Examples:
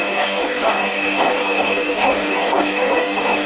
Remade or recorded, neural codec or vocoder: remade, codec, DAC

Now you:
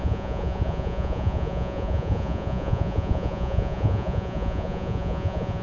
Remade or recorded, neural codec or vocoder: remade, vocoder, Vocos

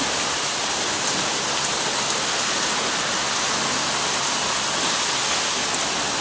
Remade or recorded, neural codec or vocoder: recorded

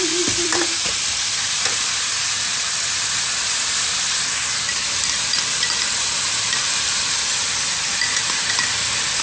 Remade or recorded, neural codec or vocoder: remade, vocoder, BigVGAN v2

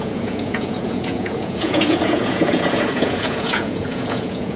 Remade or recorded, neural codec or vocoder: remade, vocoder, Vocos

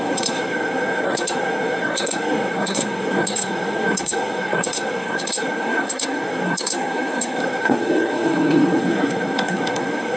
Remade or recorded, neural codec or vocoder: remade, codec, SNAC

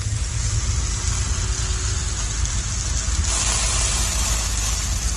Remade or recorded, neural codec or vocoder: recorded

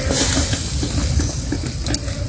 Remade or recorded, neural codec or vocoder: recorded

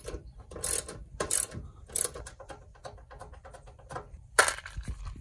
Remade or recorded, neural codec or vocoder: remade, vocoder, BigVGAN v2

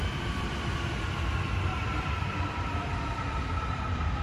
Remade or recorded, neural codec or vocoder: remade, vocoder, BigVGAN v2